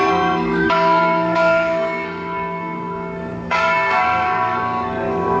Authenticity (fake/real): fake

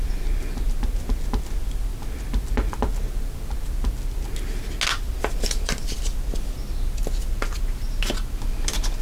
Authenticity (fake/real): real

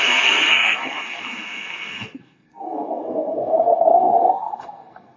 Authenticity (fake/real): fake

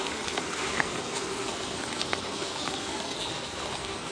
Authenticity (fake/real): fake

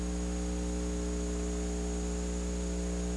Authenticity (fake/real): real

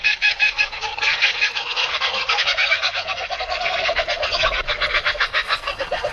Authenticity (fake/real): fake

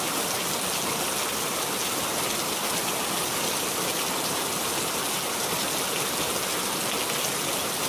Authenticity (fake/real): real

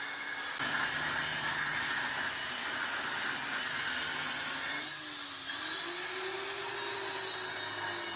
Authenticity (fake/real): real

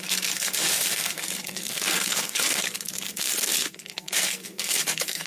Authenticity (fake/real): fake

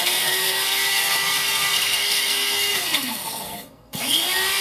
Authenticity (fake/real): fake